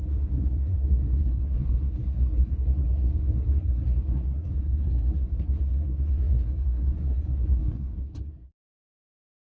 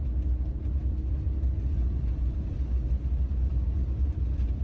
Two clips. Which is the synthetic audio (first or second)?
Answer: first